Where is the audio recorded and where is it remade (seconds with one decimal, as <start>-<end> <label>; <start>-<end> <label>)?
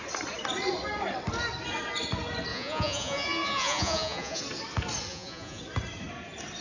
0.0-2.5 recorded; 2.5-4.4 remade; 4.4-5.1 recorded; 5.1-5.6 remade; 5.6-6.6 recorded